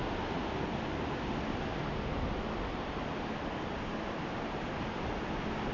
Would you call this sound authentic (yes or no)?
yes